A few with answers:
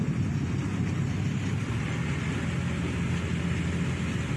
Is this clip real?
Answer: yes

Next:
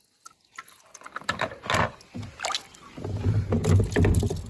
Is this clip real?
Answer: yes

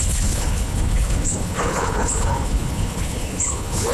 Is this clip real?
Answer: no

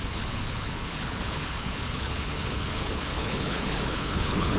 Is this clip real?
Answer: no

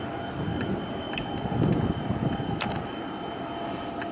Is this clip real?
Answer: yes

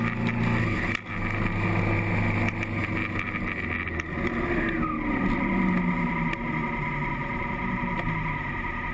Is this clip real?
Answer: yes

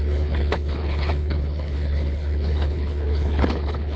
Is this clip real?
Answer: no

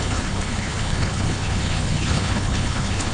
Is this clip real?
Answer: no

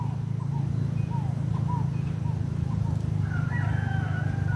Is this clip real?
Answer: yes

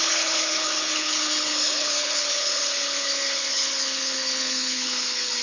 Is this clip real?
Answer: no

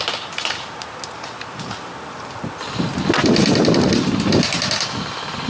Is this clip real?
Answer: yes